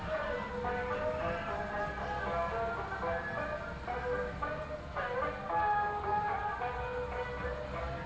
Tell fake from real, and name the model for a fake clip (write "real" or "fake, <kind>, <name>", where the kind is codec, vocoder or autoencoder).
real